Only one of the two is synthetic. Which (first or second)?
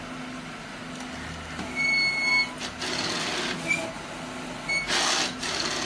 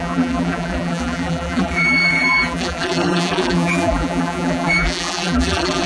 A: second